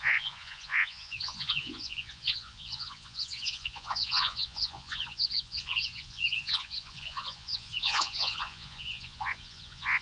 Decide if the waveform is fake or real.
fake